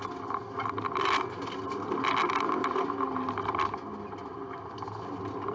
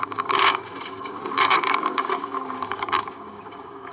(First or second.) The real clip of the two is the first